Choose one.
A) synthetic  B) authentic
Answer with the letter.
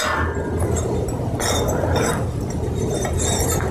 B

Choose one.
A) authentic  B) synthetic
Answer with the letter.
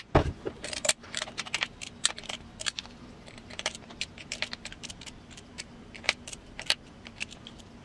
B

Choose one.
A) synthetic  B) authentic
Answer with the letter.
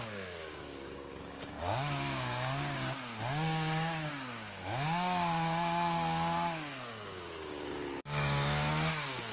A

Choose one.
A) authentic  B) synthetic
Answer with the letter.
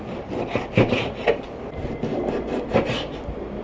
A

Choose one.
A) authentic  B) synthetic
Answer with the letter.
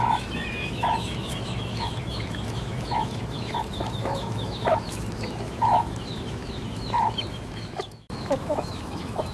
B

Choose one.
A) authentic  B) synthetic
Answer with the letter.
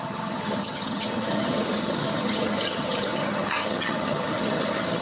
B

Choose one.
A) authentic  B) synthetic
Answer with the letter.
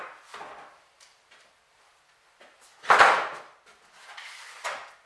A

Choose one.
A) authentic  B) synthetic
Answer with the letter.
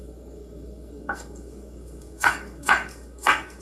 B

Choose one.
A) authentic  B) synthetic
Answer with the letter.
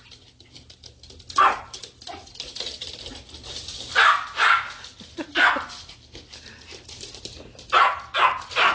A